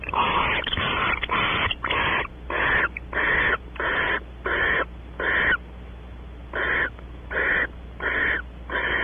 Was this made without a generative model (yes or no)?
yes